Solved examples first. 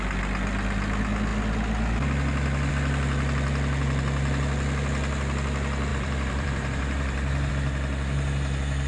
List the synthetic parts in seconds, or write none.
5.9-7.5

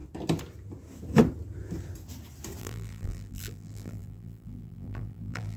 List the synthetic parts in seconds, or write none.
2.6-5.6

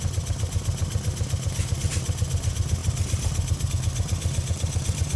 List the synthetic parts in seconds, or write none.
none

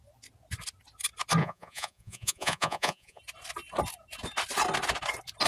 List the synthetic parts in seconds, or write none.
1.4-3.2

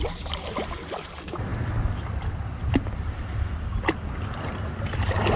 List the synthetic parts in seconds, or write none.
none

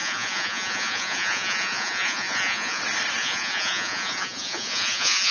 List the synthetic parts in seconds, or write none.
0.0-2.8; 3.2-5.3

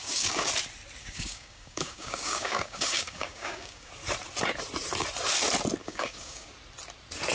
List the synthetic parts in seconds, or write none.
0.0-0.5; 1.0-3.9; 5.8-6.5